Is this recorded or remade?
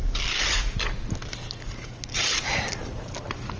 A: recorded